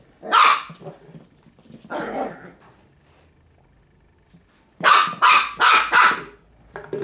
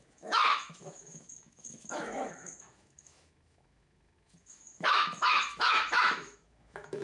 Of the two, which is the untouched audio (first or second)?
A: first